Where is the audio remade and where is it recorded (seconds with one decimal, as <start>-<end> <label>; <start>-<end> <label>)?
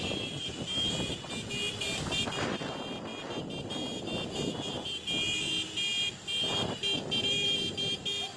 0.0-8.4 recorded